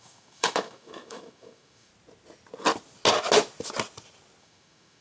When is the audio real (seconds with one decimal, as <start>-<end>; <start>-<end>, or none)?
1.9-4.4